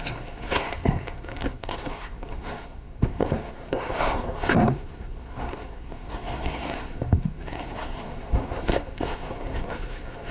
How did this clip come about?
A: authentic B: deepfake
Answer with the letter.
B